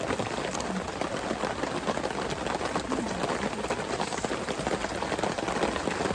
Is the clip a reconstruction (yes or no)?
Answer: no